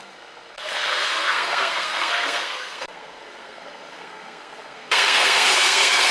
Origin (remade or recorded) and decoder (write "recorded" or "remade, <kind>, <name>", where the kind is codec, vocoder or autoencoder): remade, codec, SNAC